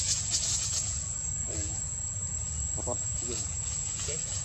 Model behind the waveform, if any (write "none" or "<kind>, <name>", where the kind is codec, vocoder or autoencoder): vocoder, Vocos